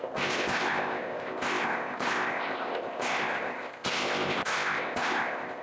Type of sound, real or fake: fake